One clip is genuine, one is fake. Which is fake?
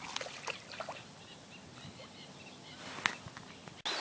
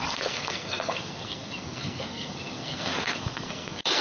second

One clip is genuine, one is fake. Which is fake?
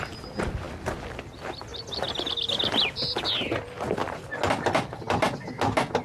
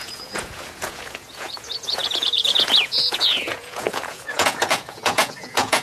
second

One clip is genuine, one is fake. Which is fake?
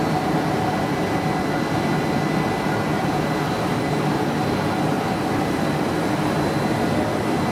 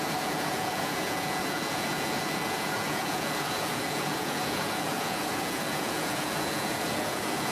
second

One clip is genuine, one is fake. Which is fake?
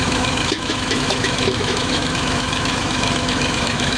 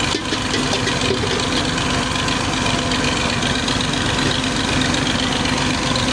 first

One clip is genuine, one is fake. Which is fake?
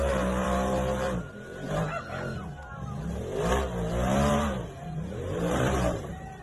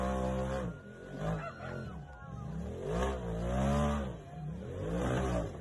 first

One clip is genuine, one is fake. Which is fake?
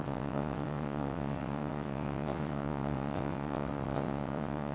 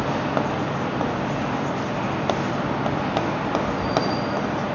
first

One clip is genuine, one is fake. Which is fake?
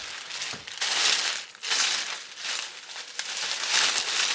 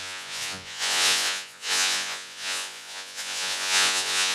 second